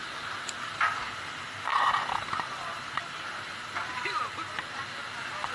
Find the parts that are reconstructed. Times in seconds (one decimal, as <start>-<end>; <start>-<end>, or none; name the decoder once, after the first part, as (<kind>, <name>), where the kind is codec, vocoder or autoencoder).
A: none